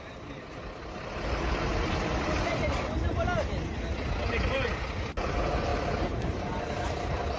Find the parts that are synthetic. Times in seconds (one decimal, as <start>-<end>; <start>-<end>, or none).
none